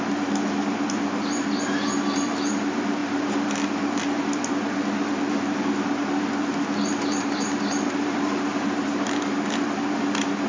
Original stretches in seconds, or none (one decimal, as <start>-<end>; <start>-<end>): 0.0-10.5